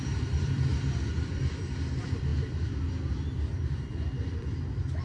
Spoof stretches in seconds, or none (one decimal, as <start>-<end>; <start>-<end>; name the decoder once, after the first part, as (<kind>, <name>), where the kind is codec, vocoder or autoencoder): 0.0-2.3 (vocoder, BigVGAN v2); 4.3-5.0